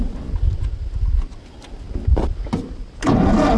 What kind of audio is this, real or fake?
real